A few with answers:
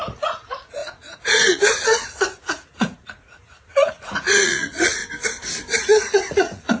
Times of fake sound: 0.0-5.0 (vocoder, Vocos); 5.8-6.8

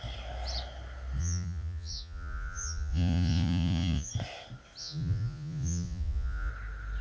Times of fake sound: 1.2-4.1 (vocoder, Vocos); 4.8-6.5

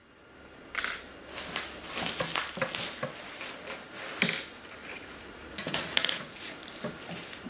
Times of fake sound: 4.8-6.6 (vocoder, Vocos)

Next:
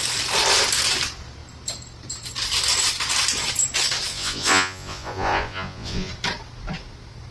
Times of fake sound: 4.1-6.1 (vocoder, Vocos)

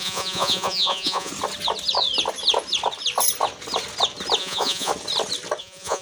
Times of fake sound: 0.0-1.3 (vocoder, Vocos); 4.4-4.9; 5.6-6.0

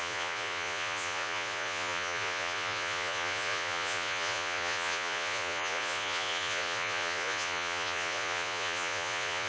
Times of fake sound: 0.0-9.5 (vocoder, Vocos)

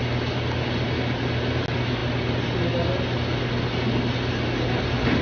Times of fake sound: none

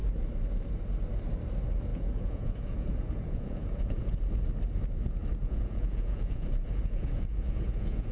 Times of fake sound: 1.9-4.2 (vocoder, Vocos); 5.4-8.1